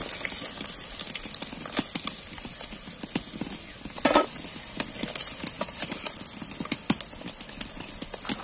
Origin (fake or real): real